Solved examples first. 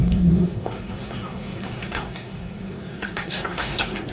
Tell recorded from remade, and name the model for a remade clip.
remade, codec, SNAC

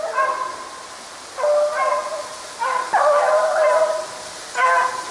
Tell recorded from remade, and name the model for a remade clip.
recorded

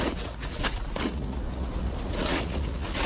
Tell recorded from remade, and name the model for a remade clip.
remade, vocoder, Vocos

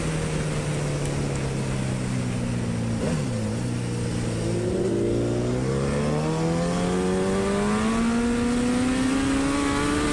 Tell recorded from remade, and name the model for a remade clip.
recorded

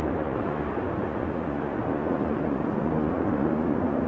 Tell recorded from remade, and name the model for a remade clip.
remade, vocoder, Vocos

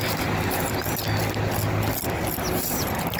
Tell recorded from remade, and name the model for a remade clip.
recorded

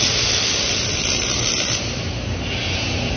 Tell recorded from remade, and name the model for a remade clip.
recorded